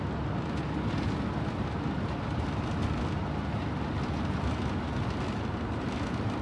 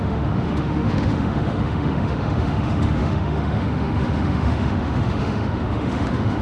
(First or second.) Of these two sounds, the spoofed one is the second